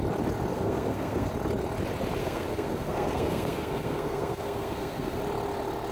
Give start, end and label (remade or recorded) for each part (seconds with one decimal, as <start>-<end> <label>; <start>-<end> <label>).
0.0-0.5 recorded; 0.5-1.3 remade; 1.3-2.2 recorded; 2.2-5.2 remade; 5.2-5.9 recorded